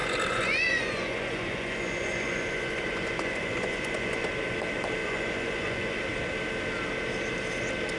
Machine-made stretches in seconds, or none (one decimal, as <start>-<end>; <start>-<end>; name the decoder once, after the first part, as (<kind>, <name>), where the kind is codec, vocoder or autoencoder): 0.0-4.3 (vocoder, Vocos); 5.0-6.0